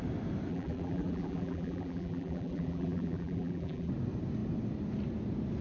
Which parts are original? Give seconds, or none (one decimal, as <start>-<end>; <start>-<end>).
0.0-0.5; 3.9-5.6